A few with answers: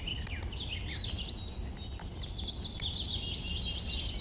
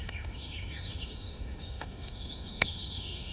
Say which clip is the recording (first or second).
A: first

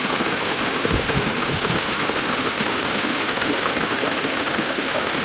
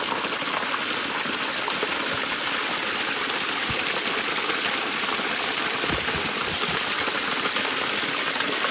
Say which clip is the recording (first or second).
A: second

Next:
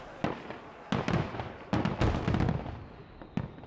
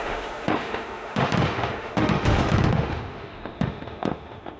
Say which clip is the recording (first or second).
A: first